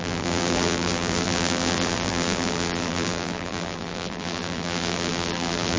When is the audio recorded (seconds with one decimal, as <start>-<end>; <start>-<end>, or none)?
none